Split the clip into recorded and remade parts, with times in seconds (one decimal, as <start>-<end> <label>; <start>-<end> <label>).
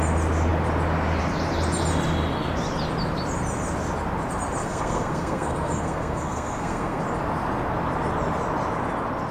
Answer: 0.0-4.6 recorded; 4.6-7.0 remade; 7.0-9.3 recorded